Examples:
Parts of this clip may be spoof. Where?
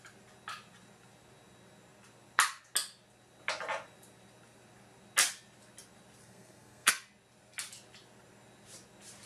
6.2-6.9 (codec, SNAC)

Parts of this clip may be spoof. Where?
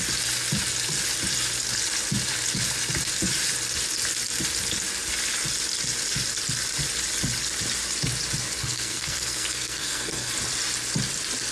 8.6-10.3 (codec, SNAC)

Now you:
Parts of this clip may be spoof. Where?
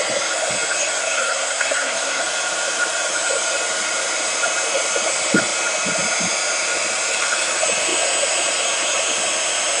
1.0-2.2 (codec, SNAC)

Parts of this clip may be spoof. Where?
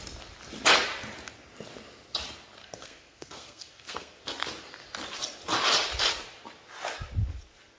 2.6-4.2 (codec, SNAC)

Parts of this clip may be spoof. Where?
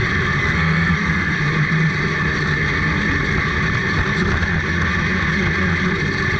0.4-1.4 (codec, SNAC)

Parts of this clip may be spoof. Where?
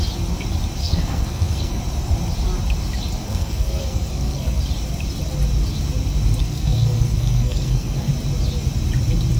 0.8-1.8 (codec, SNAC); 3.2-4.6; 6.4-8.1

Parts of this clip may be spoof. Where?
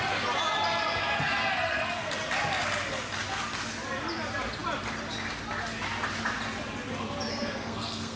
1.5-2.1 (codec, SNAC); 7.3-8.2